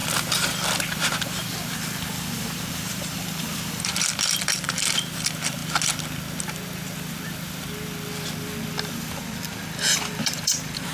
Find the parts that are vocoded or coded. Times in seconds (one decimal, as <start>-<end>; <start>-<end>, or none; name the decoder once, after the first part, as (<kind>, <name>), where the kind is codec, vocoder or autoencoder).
2.4-5.6 (vocoder, BigVGAN v2); 8.8-10.9